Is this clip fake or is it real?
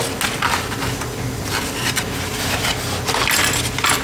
real